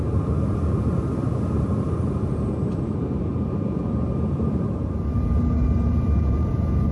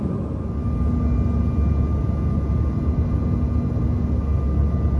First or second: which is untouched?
second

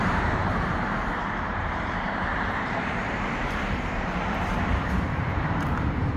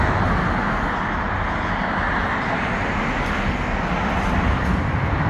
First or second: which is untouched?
second